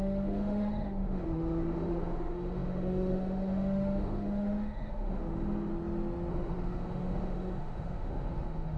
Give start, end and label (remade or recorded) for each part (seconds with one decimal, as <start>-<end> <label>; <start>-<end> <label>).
0.0-5.7 remade; 5.7-6.3 recorded; 6.3-8.8 remade